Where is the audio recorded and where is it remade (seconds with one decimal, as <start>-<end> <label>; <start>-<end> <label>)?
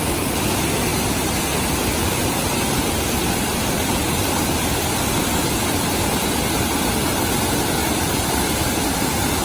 0.0-7.8 recorded; 7.8-8.5 remade; 8.5-9.4 recorded